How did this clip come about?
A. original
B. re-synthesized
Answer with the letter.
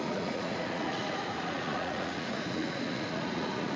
B